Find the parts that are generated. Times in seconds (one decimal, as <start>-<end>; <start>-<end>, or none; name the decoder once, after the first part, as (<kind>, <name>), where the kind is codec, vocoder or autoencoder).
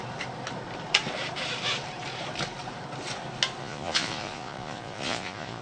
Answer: 3.6-5.6 (vocoder, Vocos)